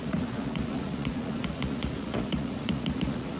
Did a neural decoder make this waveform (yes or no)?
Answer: yes